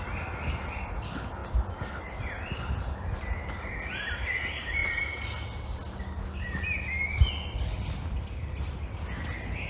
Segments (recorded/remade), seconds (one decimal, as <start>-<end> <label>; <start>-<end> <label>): 0.0-9.7 recorded